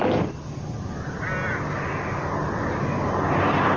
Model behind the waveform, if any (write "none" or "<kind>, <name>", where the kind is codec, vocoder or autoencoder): none